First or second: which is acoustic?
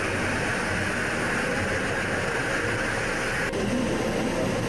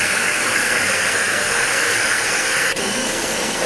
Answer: first